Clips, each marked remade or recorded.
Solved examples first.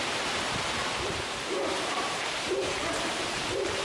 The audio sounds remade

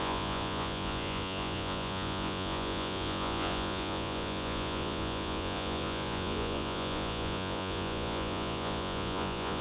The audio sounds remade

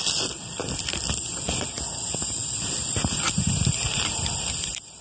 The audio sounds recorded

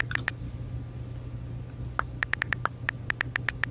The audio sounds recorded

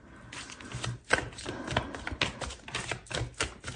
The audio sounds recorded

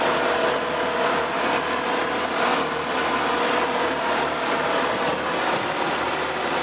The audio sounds recorded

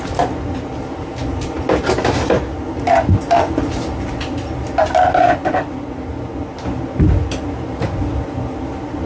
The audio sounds recorded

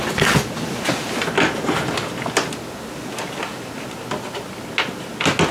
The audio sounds recorded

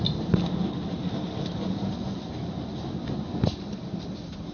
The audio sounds recorded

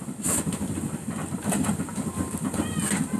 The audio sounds recorded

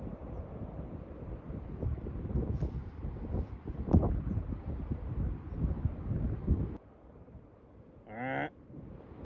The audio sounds recorded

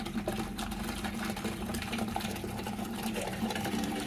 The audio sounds remade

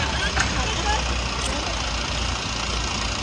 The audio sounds recorded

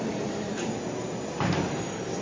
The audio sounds recorded